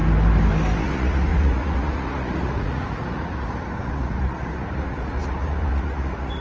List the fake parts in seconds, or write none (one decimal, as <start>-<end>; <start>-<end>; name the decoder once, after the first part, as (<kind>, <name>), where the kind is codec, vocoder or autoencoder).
0.8-6.4 (vocoder, Vocos)